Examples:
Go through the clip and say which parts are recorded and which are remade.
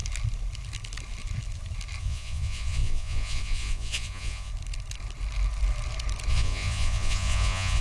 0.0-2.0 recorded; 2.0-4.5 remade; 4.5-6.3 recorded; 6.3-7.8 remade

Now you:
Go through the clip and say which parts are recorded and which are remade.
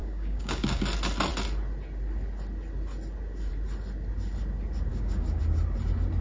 0.0-0.8 remade; 0.8-4.9 recorded; 4.9-5.4 remade; 5.4-6.2 recorded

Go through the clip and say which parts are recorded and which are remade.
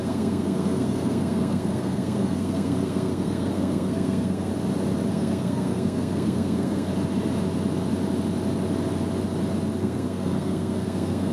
0.0-4.5 remade; 4.5-5.1 recorded; 5.1-6.9 remade; 6.9-9.8 recorded; 9.8-11.3 remade